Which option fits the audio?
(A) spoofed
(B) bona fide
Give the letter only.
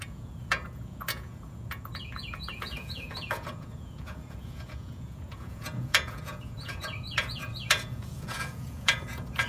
A